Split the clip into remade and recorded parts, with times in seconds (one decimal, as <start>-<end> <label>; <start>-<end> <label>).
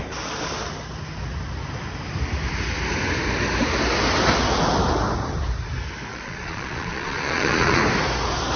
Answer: 0.0-6.1 recorded; 6.1-7.8 remade; 7.8-8.6 recorded